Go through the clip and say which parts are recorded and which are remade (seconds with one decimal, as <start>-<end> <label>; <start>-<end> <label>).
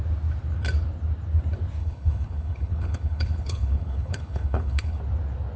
0.0-1.8 recorded; 1.8-5.0 remade; 5.0-5.6 recorded